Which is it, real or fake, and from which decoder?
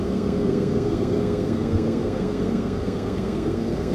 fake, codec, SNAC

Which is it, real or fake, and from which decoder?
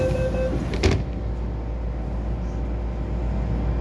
real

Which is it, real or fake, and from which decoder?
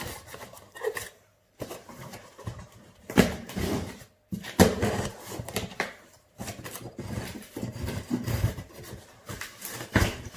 fake, vocoder, BigVGAN v2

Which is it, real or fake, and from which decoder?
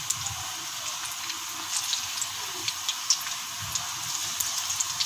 real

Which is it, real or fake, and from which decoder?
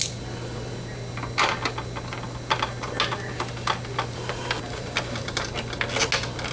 real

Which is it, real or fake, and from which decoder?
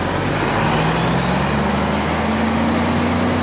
real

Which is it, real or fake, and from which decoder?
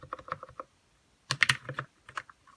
fake, vocoder, BigVGAN v2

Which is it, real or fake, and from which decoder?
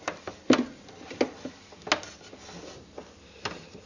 real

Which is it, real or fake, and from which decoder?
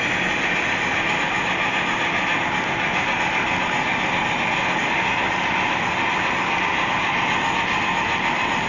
real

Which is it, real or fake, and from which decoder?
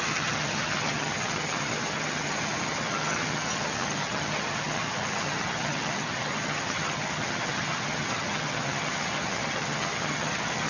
fake, vocoder, HiFi-GAN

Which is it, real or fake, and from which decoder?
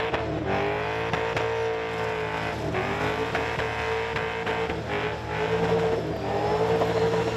real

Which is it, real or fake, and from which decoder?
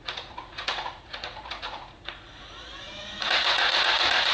fake, vocoder, Vocos